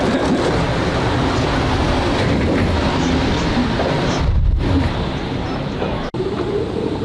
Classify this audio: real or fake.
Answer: fake